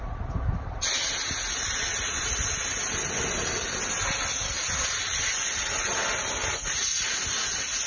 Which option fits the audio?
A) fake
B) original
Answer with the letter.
B